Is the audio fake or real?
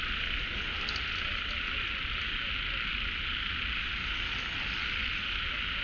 real